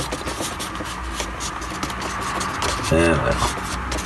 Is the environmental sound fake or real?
real